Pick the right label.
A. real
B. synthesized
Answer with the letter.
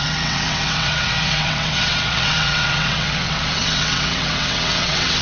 B